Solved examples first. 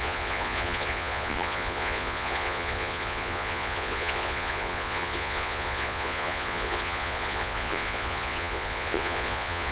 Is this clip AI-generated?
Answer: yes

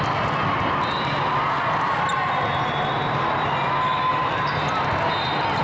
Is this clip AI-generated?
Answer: no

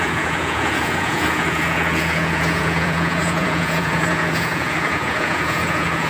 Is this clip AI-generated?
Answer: yes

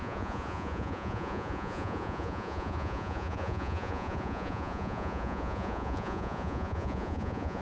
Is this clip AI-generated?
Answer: yes